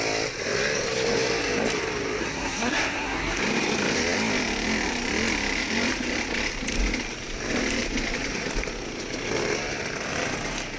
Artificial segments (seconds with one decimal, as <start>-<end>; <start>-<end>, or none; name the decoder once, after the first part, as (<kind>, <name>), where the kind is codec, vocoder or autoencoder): 2.2-3.4 (codec, SNAC)